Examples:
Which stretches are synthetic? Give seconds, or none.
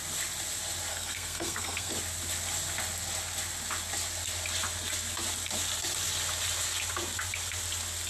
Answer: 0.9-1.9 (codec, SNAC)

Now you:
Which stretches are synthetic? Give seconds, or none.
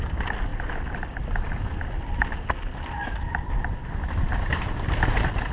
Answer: none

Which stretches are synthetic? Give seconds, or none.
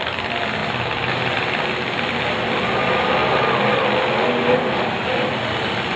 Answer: none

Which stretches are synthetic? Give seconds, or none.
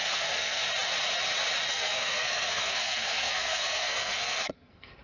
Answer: 0.0-0.6 (codec, SNAC); 1.7-5.0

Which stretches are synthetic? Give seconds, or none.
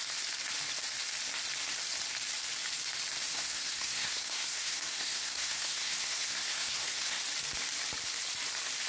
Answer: 3.3-7.2 (codec, SNAC)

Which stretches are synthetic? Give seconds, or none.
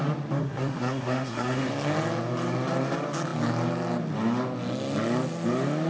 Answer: 0.4-1.7 (codec, SNAC)